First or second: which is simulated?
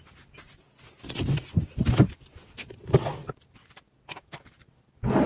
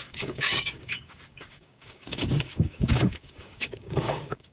second